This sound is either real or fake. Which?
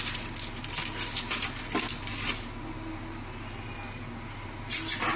real